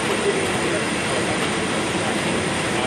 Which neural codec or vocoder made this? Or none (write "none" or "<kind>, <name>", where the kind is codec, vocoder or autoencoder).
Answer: none